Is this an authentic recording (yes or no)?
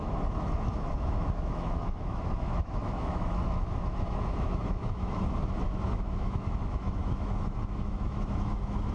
no